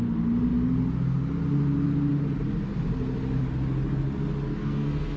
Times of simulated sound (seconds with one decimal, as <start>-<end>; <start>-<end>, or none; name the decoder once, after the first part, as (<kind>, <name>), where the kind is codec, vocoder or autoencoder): 4.5-5.2 (codec, SNAC)